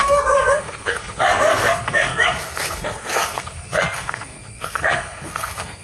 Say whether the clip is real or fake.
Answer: fake